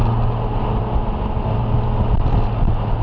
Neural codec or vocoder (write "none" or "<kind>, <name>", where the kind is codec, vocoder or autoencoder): none